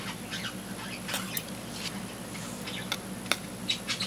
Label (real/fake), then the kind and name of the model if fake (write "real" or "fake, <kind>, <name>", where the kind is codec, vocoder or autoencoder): real